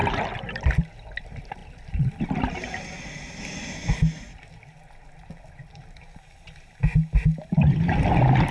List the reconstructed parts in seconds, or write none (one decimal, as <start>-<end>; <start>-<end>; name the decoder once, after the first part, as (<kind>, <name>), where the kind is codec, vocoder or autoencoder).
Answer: none